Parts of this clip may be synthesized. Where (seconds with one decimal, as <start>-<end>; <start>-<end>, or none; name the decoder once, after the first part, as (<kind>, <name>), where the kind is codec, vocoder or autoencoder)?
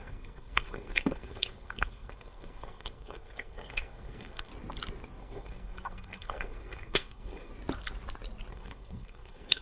0.0-4.5 (codec, SNAC); 5.2-7.5; 8.5-9.6